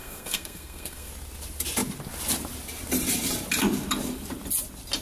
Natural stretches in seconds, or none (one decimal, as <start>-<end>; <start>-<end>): 1.1-5.0